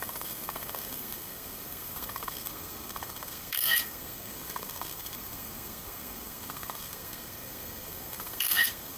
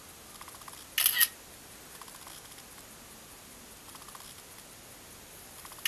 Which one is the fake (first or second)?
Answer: first